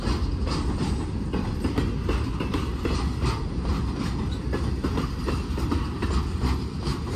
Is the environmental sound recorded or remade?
recorded